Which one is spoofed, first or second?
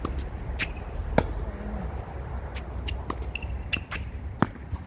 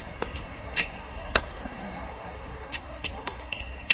second